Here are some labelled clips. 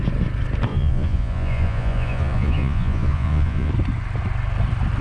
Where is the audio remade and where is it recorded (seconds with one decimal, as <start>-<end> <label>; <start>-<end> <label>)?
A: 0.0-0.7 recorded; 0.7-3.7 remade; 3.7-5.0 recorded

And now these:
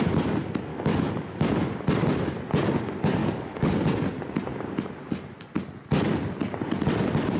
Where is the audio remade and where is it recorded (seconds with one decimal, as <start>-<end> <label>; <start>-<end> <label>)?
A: 0.0-0.7 recorded; 0.7-1.8 remade; 1.8-3.2 recorded; 3.2-3.7 remade; 3.7-7.4 recorded

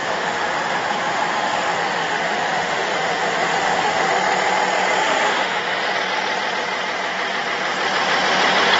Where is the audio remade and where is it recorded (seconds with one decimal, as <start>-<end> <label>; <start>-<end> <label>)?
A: 0.0-4.1 remade; 4.1-5.0 recorded; 5.0-5.9 remade; 5.9-8.8 recorded